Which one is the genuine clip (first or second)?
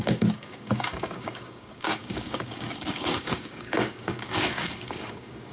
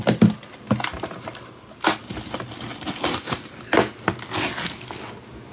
second